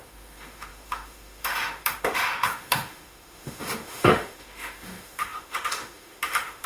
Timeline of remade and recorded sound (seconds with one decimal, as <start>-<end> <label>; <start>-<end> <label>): 0.0-6.7 remade